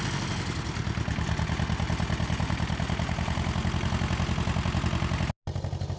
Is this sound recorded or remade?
recorded